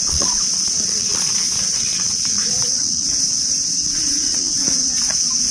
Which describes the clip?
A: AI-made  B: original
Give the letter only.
A